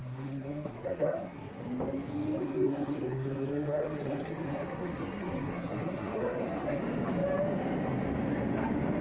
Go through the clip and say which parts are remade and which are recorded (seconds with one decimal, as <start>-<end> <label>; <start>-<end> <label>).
0.0-1.6 remade; 1.6-2.4 recorded; 2.4-6.8 remade; 6.8-9.0 recorded